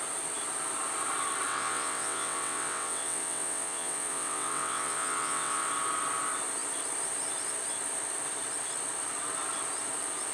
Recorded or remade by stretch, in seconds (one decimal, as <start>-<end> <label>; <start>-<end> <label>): 0.0-1.5 recorded; 1.5-5.7 remade; 5.7-10.3 recorded